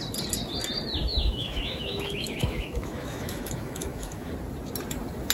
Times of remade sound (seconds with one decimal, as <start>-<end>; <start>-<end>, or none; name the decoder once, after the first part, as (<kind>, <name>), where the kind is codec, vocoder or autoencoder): 1.1-4.3 (autoencoder, DAC-VAE)